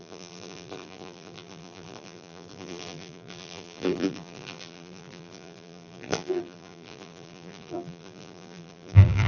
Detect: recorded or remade remade